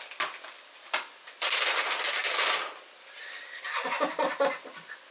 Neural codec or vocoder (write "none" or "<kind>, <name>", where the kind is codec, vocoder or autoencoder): none